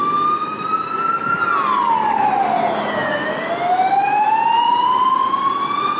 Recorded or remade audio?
recorded